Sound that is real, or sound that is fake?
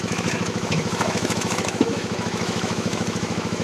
fake